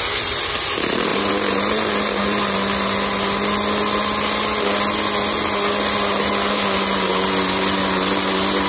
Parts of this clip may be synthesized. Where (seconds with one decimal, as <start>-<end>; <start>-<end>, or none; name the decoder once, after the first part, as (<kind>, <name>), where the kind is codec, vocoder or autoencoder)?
none